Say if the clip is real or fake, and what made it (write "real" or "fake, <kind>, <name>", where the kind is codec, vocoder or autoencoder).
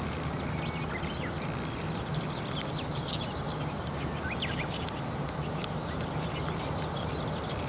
real